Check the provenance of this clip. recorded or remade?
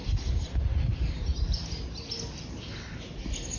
recorded